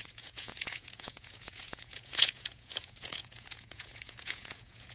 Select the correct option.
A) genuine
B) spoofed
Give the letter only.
B